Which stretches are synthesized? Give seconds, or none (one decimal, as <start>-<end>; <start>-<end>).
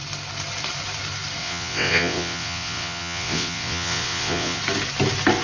1.4-4.6